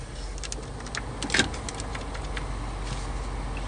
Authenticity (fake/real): real